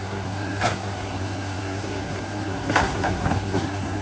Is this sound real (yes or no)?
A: no